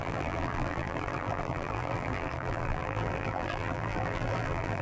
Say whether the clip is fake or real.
fake